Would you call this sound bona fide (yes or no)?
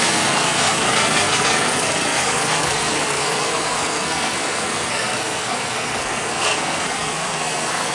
no